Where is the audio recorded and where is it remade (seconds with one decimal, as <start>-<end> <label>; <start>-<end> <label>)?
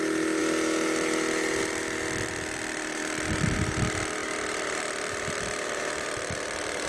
0.0-6.9 recorded